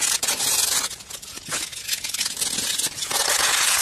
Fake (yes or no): yes